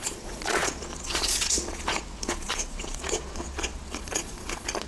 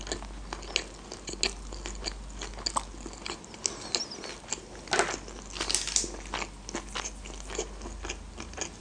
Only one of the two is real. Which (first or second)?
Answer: second